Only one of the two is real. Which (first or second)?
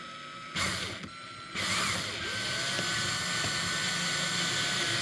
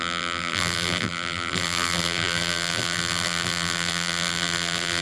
first